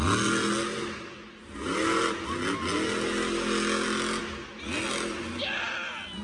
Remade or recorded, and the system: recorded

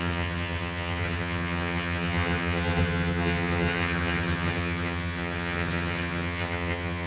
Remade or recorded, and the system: remade, vocoder, HiFi-GAN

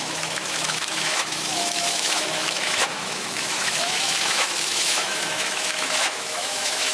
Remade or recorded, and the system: remade, autoencoder, DAC-VAE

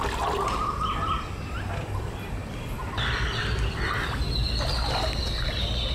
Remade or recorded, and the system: recorded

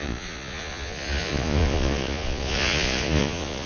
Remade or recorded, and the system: remade, vocoder, Vocos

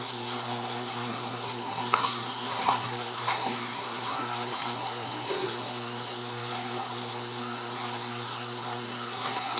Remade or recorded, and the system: remade, codec, SNAC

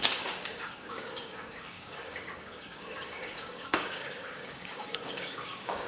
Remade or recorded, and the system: remade, codec, DAC